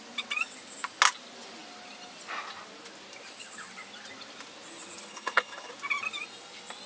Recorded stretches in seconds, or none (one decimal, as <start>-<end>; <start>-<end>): 0.0-5.1; 5.7-6.9